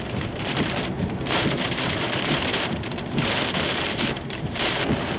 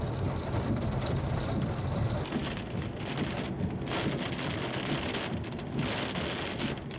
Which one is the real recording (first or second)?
second